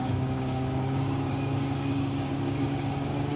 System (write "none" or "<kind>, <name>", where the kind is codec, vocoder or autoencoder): codec, DAC